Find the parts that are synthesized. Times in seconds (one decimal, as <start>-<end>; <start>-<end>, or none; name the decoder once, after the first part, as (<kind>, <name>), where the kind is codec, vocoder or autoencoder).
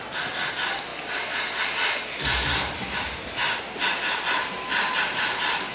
none